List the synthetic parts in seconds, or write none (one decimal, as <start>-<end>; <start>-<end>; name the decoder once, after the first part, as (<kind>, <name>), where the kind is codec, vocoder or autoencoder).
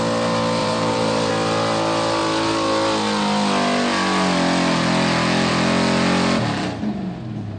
0.6-1.3 (vocoder, BigVGAN v2)